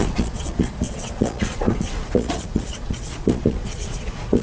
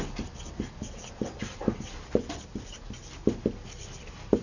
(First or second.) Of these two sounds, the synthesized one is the first